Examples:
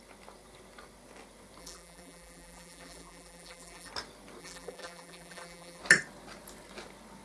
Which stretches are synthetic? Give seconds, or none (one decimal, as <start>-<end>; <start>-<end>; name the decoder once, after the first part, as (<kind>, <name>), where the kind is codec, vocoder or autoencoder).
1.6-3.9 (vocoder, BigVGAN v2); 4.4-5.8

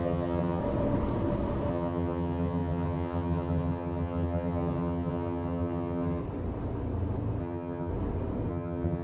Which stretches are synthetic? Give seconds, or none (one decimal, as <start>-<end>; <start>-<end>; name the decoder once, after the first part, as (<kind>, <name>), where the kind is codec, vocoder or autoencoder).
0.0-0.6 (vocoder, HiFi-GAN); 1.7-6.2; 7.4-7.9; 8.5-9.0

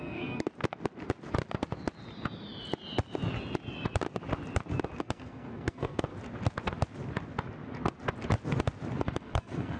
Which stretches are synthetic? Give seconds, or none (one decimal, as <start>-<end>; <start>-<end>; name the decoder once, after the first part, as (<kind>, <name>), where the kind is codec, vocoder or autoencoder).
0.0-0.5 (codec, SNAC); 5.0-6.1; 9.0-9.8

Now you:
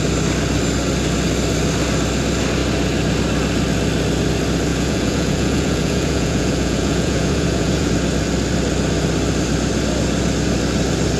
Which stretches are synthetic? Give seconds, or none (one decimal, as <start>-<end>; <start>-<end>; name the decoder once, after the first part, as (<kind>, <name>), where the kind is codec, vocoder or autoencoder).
4.7-7.9 (vocoder, Vocos)